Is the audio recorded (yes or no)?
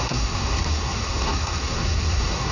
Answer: no